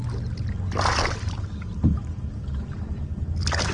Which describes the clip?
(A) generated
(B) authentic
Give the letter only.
B